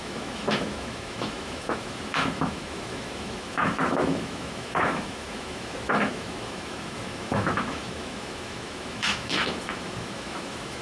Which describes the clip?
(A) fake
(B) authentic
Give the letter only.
A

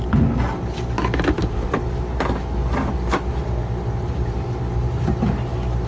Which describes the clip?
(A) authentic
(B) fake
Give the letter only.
A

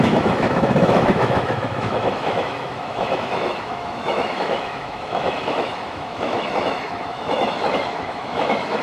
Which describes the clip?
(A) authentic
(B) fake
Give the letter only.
B